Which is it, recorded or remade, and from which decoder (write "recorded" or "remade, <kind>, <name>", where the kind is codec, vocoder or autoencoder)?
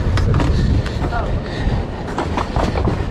recorded